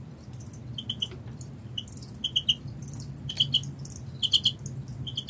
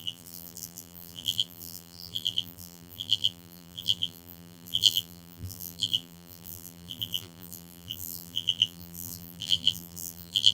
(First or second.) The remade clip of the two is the second